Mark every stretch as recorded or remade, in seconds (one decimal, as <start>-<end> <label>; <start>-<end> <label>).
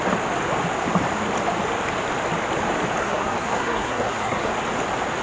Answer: 0.0-3.0 recorded; 3.0-4.5 remade; 4.5-5.2 recorded